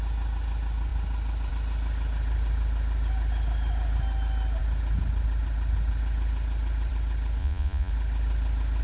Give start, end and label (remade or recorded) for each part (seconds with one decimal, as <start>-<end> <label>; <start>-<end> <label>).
0.0-7.4 recorded; 7.4-7.9 remade; 7.9-8.8 recorded